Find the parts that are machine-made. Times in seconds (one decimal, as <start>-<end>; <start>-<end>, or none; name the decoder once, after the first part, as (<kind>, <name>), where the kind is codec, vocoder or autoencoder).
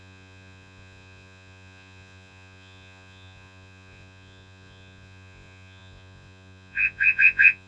0.0-7.7 (vocoder, Vocos)